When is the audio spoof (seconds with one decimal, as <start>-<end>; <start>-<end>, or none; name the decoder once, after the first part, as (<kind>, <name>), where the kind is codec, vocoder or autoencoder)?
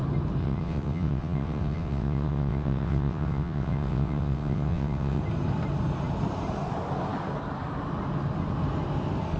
0.4-5.2 (vocoder, WaveNeXt)